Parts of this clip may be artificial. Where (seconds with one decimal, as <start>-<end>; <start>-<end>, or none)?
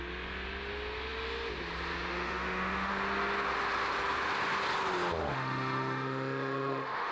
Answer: 2.1-2.9; 5.2-7.1